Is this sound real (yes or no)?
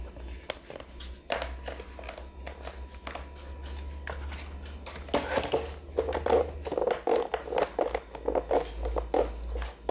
yes